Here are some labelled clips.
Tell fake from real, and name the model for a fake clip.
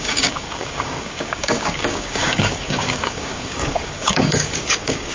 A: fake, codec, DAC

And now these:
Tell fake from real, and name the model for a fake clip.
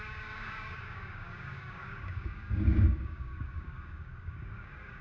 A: fake, codec, DAC